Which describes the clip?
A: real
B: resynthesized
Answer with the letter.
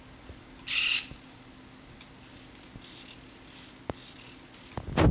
A